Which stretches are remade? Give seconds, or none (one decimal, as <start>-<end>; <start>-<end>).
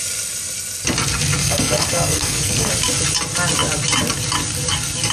1.4-2.7